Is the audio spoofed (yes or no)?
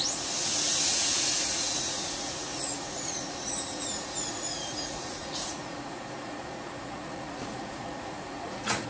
yes